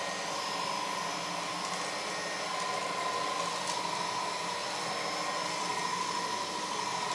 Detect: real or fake real